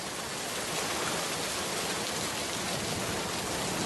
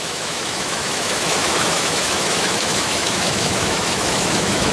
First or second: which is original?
first